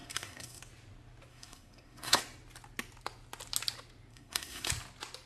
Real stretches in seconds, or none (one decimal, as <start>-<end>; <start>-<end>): 0.6-1.3; 2.2-4.1; 4.7-5.3